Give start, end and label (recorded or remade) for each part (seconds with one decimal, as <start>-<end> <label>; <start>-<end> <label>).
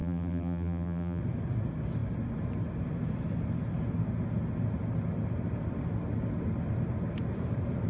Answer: 0.0-1.2 remade; 1.2-7.9 recorded